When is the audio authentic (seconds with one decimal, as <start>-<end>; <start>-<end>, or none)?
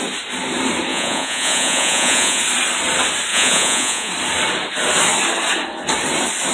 0.0-0.9; 2.4-3.3; 4.1-6.5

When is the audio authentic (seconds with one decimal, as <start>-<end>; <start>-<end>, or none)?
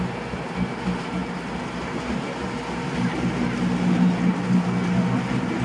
0.0-5.6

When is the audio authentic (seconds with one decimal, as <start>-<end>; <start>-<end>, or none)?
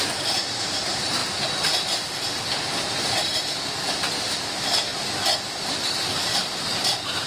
1.2-3.2; 4.9-6.1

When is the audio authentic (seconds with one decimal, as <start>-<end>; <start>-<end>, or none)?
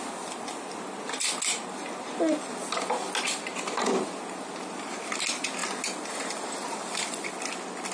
0.0-7.9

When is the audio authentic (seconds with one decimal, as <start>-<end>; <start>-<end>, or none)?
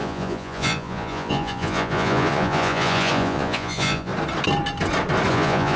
4.1-5.3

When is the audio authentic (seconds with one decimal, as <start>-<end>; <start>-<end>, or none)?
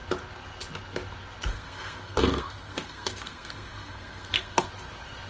0.0-1.5; 4.7-5.3